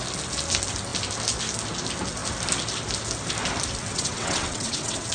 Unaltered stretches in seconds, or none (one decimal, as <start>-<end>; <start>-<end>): 0.0-3.9